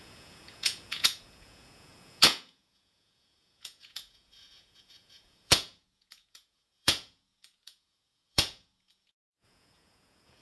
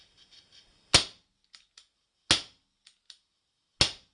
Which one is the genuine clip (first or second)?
second